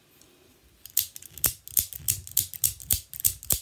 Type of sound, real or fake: real